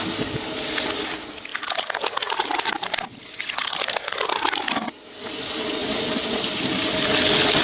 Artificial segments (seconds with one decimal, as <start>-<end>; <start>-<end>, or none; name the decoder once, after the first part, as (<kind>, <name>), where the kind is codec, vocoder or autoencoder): 1.5-4.6 (vocoder, BigVGAN v2); 5.8-7.1